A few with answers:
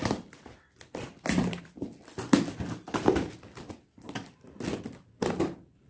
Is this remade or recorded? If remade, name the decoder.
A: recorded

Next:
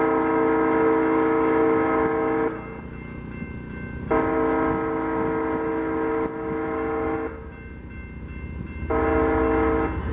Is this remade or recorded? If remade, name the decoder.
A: recorded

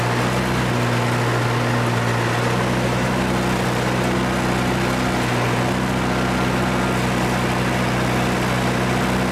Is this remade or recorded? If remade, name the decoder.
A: recorded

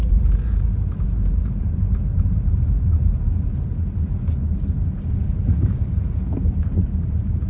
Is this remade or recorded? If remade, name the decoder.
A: remade, vocoder, BigVGAN v2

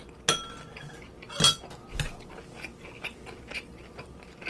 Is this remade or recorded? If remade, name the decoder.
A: recorded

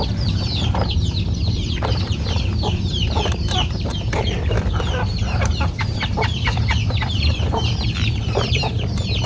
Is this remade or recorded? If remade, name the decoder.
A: remade, vocoder, BigVGAN v2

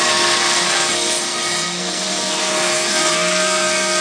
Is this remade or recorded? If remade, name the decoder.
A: remade, codec, SNAC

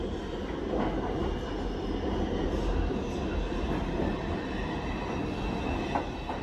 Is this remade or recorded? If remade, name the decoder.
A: recorded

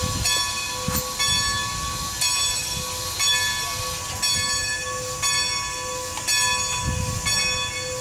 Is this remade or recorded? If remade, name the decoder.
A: recorded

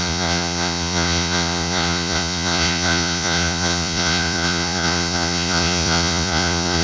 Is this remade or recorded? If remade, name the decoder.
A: remade, vocoder, Vocos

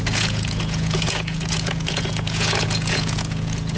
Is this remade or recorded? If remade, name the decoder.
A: remade, vocoder, Vocos